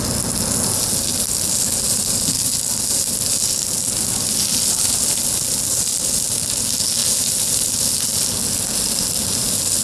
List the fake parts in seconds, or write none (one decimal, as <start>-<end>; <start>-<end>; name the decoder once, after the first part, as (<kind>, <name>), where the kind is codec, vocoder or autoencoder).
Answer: none